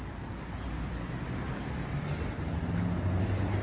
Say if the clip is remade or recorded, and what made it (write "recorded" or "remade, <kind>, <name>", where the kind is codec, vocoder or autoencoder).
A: recorded